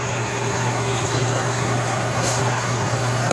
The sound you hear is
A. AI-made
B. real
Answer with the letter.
A